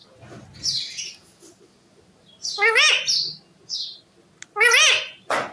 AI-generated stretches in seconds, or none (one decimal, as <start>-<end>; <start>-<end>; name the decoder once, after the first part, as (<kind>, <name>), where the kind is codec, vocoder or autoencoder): none